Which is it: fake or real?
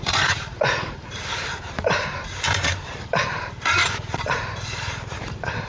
fake